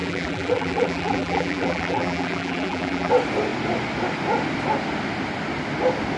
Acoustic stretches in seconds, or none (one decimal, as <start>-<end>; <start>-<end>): 3.1-6.2